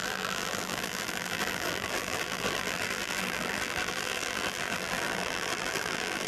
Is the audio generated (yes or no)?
yes